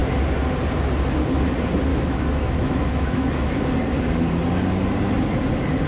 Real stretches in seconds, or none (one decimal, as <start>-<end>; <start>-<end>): 0.0-1.9; 3.6-5.9